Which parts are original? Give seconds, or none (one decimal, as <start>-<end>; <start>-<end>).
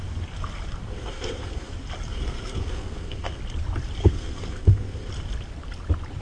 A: 0.0-0.9; 1.7-2.1; 3.4-4.0; 5.1-6.2